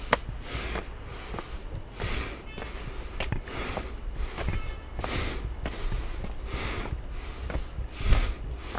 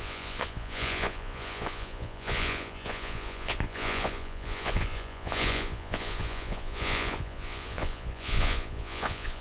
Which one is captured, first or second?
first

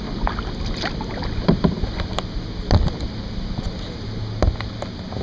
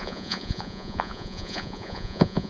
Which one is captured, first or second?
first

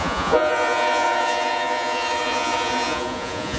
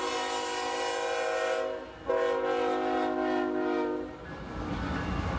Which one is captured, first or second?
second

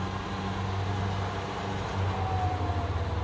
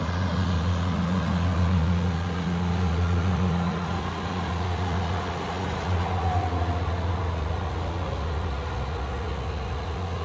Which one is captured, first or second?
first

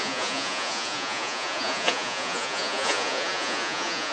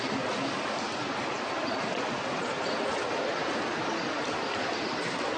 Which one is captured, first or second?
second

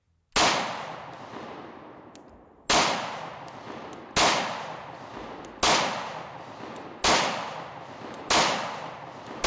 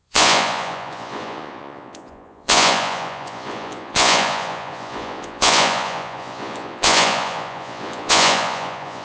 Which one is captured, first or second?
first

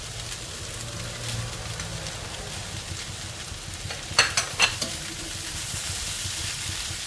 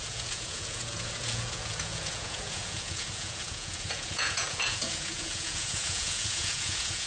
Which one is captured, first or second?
first